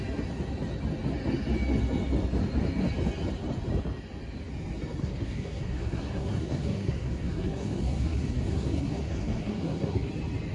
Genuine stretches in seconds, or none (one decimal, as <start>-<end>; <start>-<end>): 0.0-5.0; 10.1-10.5